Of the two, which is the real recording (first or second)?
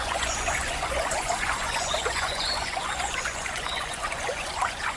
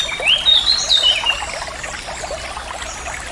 second